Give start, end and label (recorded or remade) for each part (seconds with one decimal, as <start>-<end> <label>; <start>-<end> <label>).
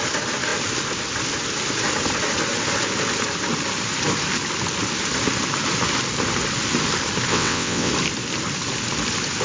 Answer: 0.0-7.3 recorded; 7.3-7.9 remade; 7.9-9.4 recorded